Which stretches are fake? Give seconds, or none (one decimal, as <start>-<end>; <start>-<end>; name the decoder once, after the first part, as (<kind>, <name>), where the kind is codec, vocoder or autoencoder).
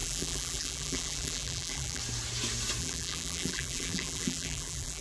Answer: 0.0-2.0 (vocoder, BigVGAN v2); 2.8-5.0